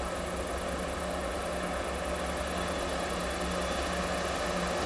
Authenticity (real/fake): real